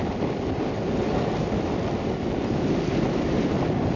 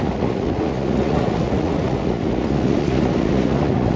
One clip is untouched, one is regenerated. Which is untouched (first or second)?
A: first